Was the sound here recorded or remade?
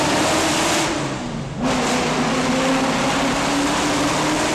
recorded